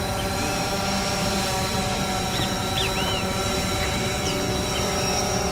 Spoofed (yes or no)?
yes